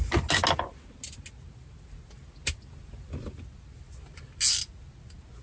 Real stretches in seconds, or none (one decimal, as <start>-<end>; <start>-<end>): 0.0-5.4